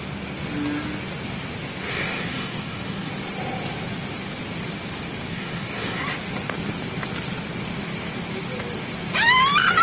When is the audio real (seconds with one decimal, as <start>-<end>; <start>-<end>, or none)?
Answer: 0.0-1.9; 3.1-5.3; 6.0-9.8